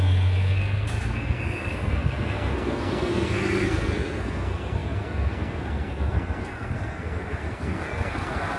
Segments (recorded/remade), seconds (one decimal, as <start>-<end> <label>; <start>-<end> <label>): 0.0-8.6 remade

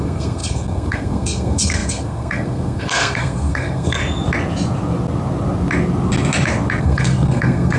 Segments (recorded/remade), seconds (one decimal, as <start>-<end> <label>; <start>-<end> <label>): 0.0-4.0 remade; 4.0-6.8 recorded; 6.8-7.8 remade

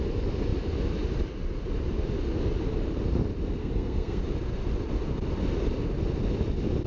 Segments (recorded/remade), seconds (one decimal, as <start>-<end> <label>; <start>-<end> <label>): 0.0-3.6 recorded; 3.6-4.2 remade; 4.2-6.9 recorded

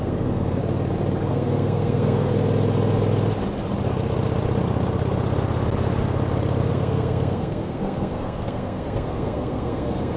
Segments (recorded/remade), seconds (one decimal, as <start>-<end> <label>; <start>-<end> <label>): 0.0-0.6 remade; 0.6-1.3 recorded; 1.3-2.3 remade; 2.3-6.6 recorded; 6.6-10.2 remade

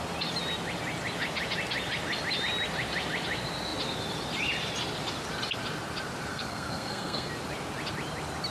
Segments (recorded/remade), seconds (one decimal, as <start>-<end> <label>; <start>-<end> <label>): 0.0-6.3 recorded; 6.3-7.3 remade; 7.3-8.5 recorded

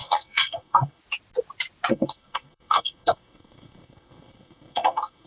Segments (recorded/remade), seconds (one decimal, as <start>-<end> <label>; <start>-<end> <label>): 0.0-1.0 remade; 1.0-1.9 recorded; 1.9-5.3 remade

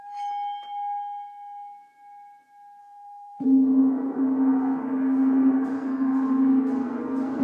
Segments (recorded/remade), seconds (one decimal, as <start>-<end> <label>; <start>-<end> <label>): 0.0-2.8 recorded; 2.8-7.4 remade

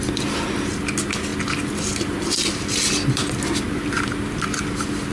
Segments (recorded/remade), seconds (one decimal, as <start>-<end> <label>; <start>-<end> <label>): 0.0-5.1 recorded